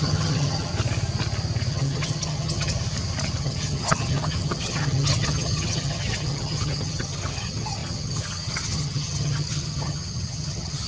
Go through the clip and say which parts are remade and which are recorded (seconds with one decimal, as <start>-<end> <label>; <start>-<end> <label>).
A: 0.0-0.7 remade; 0.7-1.7 recorded; 1.7-2.7 remade; 2.7-3.4 recorded; 3.4-10.9 remade